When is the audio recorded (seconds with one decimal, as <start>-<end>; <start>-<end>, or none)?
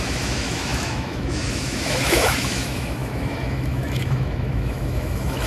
none